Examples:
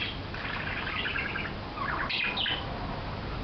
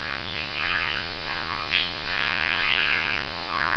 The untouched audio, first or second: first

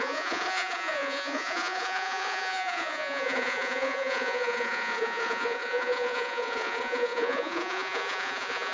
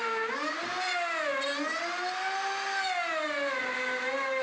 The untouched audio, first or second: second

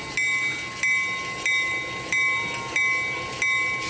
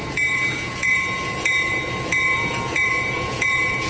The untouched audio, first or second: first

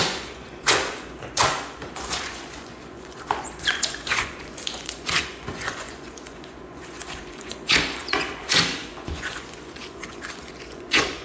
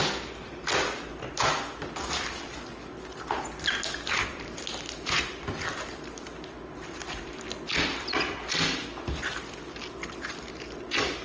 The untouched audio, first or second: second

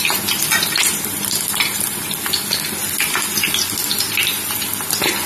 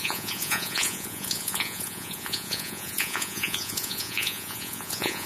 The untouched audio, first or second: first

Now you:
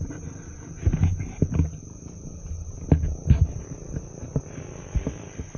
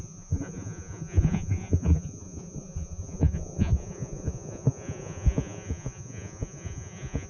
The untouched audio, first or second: first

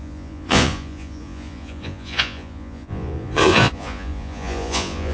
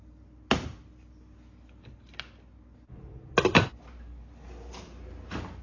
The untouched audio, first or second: second